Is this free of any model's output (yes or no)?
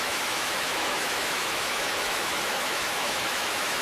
no